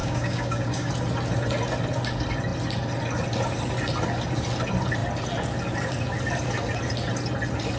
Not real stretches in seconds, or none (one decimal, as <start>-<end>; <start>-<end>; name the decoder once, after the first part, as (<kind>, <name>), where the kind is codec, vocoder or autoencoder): 0.0-0.9 (codec, DAC)